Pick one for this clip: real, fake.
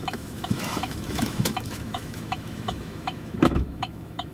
fake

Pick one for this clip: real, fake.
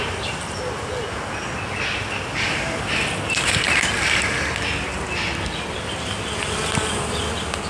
real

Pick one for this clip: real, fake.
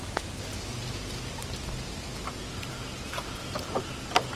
real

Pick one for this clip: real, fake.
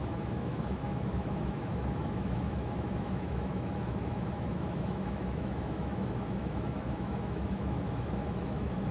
fake